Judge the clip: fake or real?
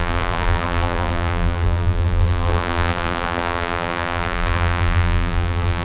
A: fake